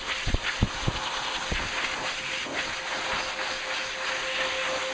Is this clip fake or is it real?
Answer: real